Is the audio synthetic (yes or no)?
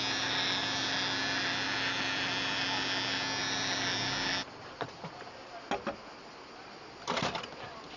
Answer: no